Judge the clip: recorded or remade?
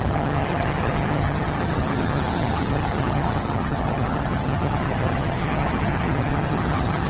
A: remade